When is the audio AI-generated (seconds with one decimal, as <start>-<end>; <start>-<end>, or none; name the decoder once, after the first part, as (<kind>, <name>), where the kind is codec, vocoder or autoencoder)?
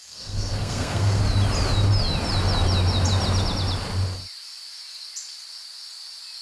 0.0-1.2 (codec, SNAC)